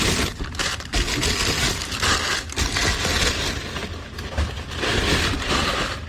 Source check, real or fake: real